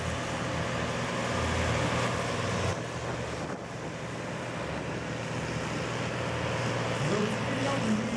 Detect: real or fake real